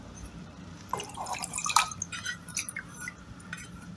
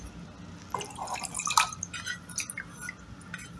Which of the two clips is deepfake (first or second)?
first